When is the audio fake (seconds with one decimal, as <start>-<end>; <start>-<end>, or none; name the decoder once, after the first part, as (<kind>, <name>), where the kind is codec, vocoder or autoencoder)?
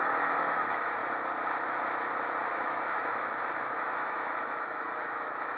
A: 0.0-1.0 (autoencoder, DAC-VAE); 2.5-5.6